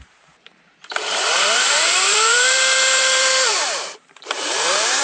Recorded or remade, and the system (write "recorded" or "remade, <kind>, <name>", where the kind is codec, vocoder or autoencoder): remade, vocoder, BigVGAN v2